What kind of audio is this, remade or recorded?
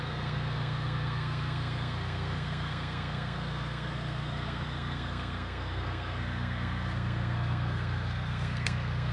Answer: remade